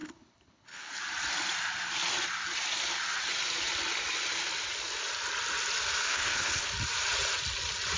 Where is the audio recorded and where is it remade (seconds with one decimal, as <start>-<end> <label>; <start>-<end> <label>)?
0.0-1.0 remade; 1.0-6.1 recorded; 6.1-6.7 remade; 6.7-8.0 recorded